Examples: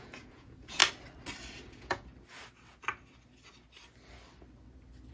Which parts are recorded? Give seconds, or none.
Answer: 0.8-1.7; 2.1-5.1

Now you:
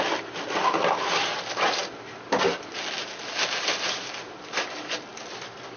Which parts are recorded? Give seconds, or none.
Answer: 0.0-5.8

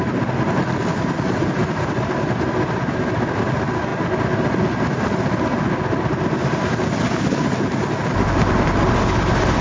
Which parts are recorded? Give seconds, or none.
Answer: 0.0-9.6